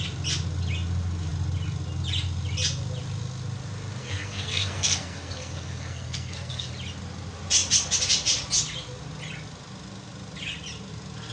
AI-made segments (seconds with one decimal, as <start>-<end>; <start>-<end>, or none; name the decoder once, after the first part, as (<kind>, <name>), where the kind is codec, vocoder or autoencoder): 4.0-6.7 (codec, SNAC)